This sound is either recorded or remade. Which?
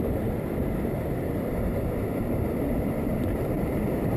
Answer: recorded